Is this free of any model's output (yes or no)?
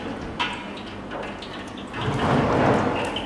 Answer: yes